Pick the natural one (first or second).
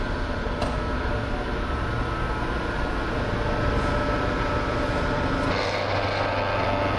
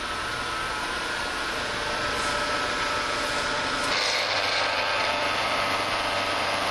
first